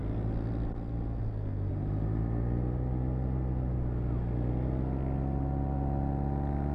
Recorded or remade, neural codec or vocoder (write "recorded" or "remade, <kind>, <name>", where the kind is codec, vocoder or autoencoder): recorded